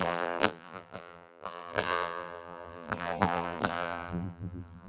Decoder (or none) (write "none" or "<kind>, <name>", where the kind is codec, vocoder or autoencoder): vocoder, BigVGAN v2